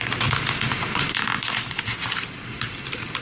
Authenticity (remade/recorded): recorded